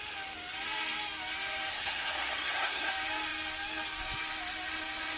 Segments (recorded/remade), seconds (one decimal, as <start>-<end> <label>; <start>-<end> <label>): 0.0-1.7 recorded; 1.7-2.9 remade; 2.9-5.2 recorded